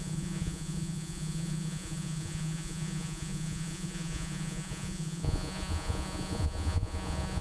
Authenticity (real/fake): fake